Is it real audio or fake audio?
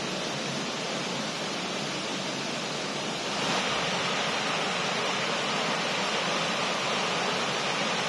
real